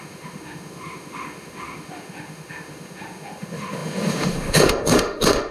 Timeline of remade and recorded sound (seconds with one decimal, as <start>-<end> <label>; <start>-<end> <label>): 0.0-5.5 remade